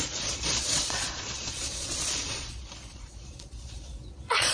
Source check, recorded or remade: remade